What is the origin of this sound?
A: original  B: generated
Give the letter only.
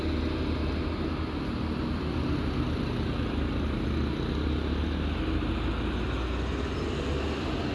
A